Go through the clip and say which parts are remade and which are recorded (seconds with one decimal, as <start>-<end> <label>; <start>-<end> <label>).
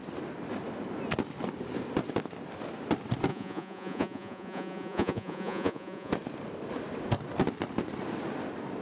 0.0-3.3 recorded; 3.3-6.1 remade; 6.1-8.8 recorded